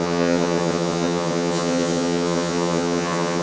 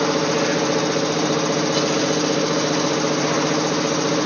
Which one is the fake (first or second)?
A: first